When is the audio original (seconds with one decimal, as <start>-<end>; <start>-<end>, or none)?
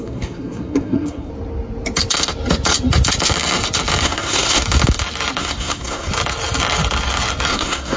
1.3-4.0; 4.6-5.4; 6.1-7.5